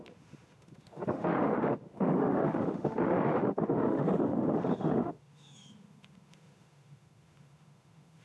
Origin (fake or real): fake